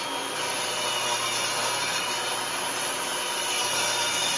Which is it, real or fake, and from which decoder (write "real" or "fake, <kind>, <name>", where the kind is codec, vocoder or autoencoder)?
real